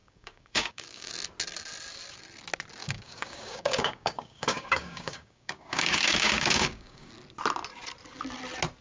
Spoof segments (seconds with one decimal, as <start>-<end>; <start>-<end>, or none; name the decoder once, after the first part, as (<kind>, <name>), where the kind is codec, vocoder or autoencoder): 0.0-1.1 (codec, DAC); 2.8-7.1